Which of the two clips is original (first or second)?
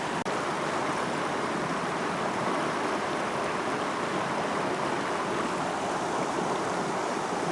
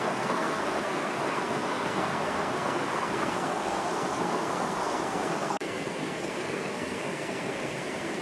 first